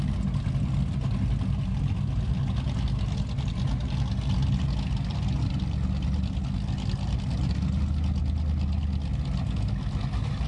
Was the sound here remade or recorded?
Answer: recorded